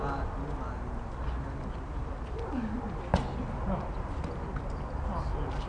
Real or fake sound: real